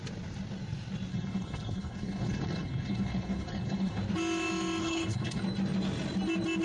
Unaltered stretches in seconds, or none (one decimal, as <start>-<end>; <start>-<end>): 0.0-1.1; 4.0-4.8; 5.4-6.6